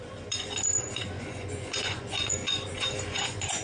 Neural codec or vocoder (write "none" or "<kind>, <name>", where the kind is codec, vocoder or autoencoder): vocoder, Vocos